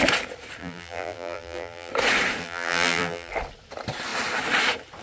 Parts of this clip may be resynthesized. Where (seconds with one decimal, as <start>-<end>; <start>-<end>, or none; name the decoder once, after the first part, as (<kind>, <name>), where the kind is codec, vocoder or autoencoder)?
0.6-1.9 (vocoder, BigVGAN v2); 2.4-3.3